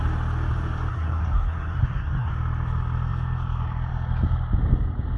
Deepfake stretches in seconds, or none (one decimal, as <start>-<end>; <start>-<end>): 0.9-2.3